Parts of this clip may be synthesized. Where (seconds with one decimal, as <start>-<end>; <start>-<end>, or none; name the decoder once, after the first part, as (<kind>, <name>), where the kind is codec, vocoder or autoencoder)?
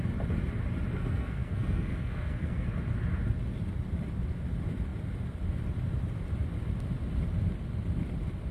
0.9-2.7 (codec, SNAC)